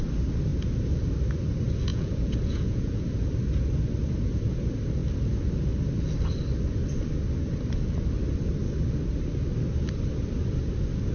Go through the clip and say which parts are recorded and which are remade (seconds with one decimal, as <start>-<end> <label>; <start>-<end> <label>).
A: 0.0-1.9 recorded; 1.9-3.0 remade; 3.0-11.1 recorded